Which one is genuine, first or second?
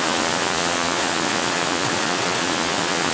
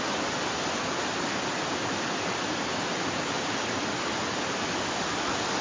second